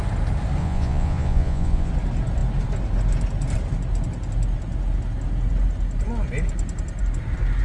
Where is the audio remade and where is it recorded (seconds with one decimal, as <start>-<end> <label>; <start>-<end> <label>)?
0.0-0.6 recorded; 0.6-1.9 remade; 1.9-7.6 recorded